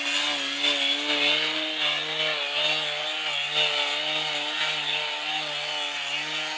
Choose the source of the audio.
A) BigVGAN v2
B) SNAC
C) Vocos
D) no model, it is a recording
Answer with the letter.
D